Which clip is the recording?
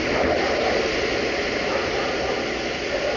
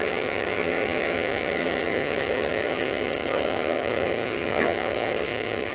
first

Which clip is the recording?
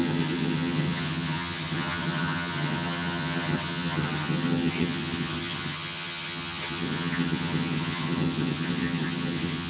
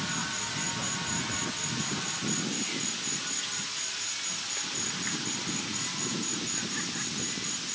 second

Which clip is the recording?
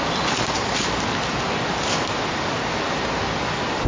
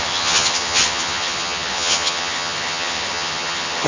first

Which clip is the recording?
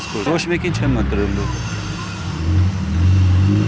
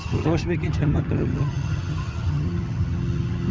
first